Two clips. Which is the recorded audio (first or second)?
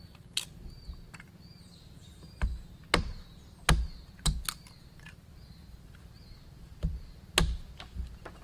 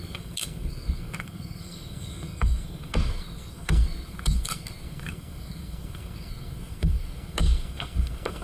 first